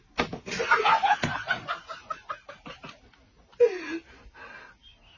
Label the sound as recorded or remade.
recorded